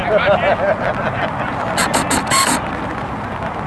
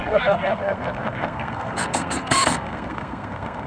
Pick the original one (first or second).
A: first